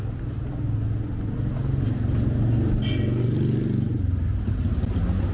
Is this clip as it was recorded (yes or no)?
yes